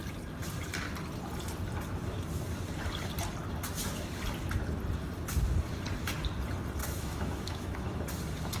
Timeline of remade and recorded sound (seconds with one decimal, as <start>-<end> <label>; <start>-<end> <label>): 0.0-6.8 recorded; 6.8-8.0 remade; 8.0-8.6 recorded